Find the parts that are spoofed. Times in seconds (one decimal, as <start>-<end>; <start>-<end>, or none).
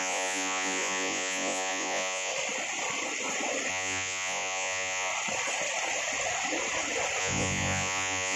0.0-2.3; 3.7-5.1; 7.2-8.4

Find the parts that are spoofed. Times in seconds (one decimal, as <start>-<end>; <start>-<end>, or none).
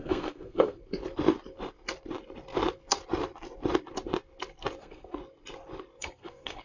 0.0-0.8; 4.8-5.2; 6.0-6.6